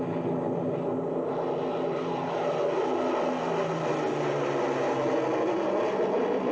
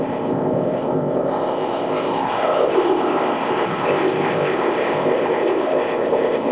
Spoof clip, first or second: second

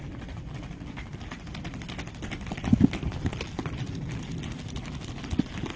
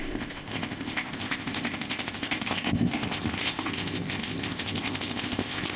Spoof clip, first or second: second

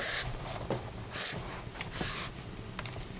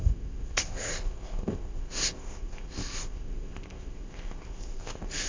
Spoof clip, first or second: second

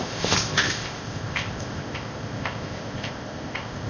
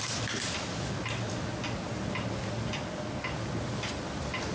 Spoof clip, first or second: first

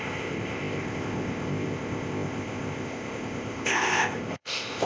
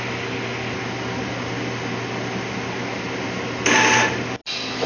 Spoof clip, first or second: first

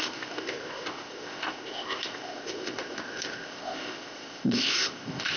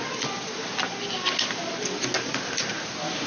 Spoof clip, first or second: first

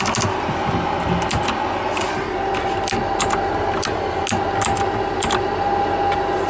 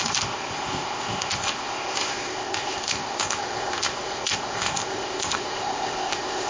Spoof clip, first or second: second